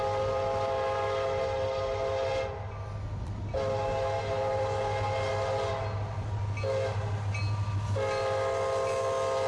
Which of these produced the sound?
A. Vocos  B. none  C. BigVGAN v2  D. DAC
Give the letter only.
B